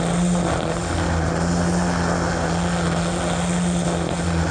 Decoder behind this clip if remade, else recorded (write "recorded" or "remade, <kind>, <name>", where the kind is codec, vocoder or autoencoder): recorded